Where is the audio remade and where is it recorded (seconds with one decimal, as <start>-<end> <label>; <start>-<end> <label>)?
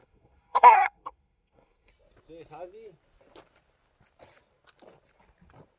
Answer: 0.0-1.9 remade; 1.9-5.8 recorded